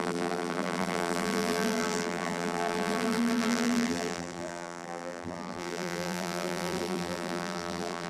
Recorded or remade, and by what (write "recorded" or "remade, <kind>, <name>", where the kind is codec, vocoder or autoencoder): remade, vocoder, BigVGAN v2